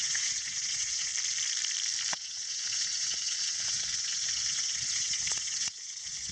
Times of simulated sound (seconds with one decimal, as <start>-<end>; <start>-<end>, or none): 0.0-1.1; 2.1-6.3